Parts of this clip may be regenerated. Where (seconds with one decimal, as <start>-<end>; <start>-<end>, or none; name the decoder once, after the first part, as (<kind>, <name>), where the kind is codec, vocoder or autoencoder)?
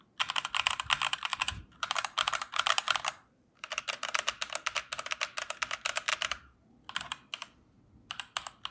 1.3-4.3 (vocoder, BigVGAN v2); 6.1-6.8